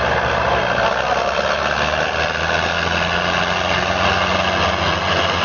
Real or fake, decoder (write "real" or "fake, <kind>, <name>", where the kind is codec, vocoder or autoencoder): real